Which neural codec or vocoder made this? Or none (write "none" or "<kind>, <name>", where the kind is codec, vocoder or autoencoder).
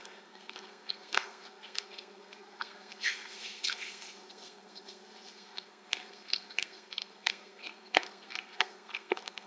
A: codec, SNAC